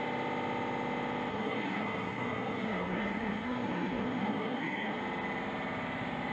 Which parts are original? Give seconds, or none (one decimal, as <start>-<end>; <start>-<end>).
0.0-1.3; 5.0-6.3